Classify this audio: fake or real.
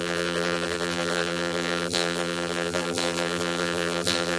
fake